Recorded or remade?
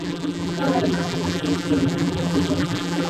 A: remade